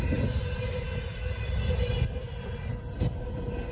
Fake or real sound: real